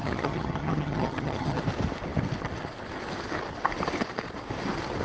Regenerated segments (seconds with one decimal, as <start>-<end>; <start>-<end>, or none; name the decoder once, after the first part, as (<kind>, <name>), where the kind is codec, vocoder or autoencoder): 0.0-1.6 (vocoder, HiFi-GAN)